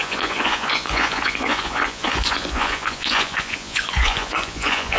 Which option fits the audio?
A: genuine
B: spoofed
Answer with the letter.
B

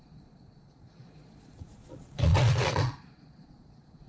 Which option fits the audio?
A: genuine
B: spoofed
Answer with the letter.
B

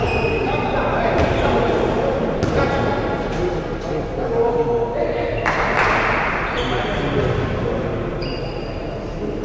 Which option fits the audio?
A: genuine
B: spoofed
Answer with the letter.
A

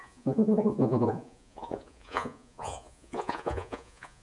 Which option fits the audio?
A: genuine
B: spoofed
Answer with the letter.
B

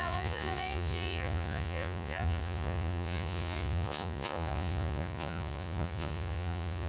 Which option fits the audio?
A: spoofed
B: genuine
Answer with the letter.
A